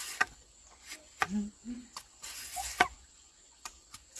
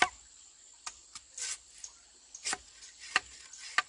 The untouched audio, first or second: second